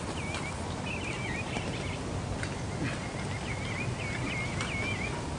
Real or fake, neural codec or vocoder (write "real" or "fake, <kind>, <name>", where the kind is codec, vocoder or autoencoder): real